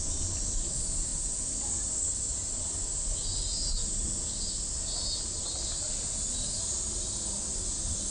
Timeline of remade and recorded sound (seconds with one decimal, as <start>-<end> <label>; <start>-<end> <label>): 0.0-8.1 recorded